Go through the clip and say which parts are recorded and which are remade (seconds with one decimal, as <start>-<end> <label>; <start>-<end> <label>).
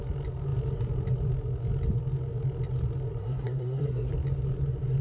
0.0-3.2 recorded; 3.2-4.1 remade; 4.1-5.0 recorded